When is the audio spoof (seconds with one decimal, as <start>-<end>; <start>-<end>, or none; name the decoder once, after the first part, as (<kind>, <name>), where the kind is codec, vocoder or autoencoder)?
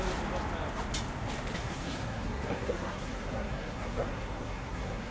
1.6-5.1 (codec, SNAC)